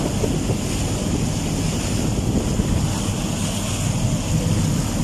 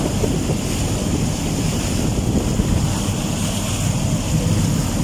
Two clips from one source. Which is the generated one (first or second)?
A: second